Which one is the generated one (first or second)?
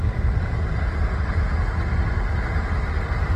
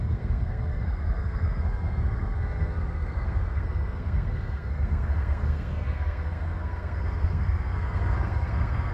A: second